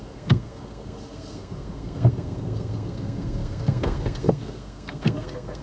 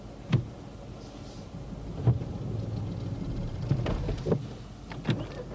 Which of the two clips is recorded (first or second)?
second